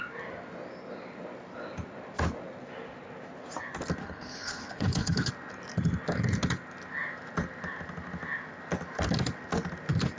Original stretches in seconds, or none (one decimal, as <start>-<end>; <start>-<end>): 0.0-4.0; 5.3-10.2